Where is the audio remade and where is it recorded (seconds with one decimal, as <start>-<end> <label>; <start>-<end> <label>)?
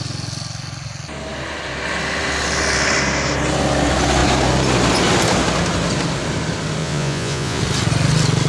0.0-6.8 recorded; 6.8-7.6 remade; 7.6-8.5 recorded